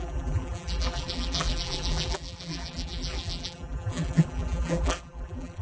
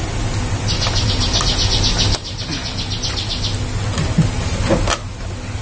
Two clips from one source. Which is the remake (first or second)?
first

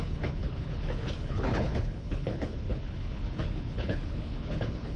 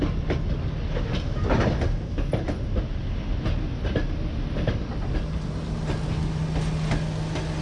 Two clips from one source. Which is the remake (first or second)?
first